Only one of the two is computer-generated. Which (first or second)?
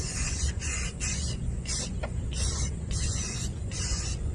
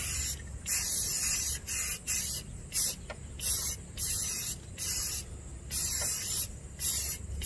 first